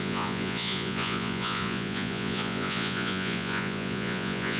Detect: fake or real fake